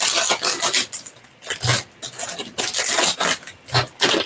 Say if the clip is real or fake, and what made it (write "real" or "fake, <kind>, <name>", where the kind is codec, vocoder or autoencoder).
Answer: real